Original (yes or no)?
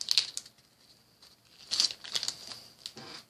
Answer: yes